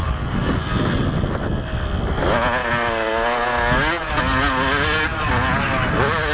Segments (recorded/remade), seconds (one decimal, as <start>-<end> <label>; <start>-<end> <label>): 0.0-6.3 recorded